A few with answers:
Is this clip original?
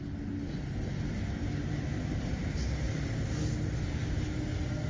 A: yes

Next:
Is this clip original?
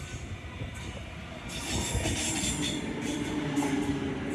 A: yes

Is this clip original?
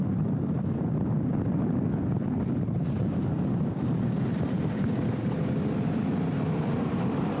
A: no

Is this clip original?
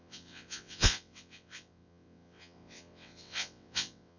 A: no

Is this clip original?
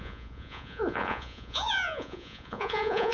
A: no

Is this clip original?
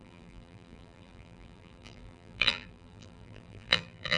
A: no